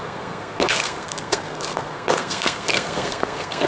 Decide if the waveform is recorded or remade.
remade